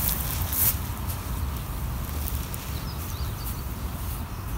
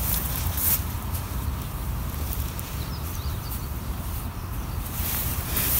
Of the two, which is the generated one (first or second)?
second